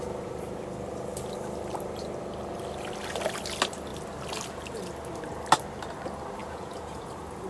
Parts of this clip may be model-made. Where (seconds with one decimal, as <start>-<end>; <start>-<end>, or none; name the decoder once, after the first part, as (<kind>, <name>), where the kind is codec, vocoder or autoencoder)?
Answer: 6.4-7.1 (vocoder, Vocos)